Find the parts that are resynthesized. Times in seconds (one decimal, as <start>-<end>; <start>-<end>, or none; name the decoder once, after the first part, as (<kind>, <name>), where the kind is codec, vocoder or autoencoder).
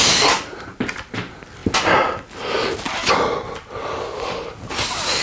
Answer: none